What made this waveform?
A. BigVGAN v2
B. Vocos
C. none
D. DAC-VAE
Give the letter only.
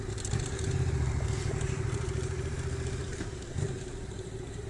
A